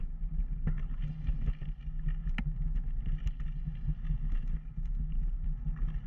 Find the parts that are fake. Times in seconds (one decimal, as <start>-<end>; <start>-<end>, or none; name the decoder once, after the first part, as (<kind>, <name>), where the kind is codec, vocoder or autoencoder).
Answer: 1.6-2.3 (vocoder, BigVGAN v2)